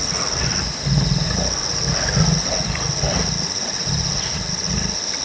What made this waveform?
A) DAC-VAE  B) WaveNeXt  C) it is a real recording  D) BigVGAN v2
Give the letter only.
C